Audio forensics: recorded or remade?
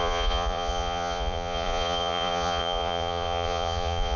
remade